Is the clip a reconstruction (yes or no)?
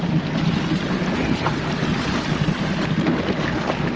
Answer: no